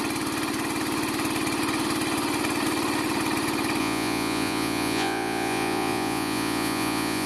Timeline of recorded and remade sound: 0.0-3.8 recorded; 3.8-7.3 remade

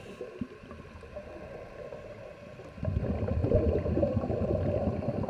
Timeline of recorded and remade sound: 0.0-5.3 recorded

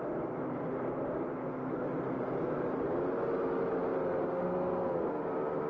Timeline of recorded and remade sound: 0.0-5.7 recorded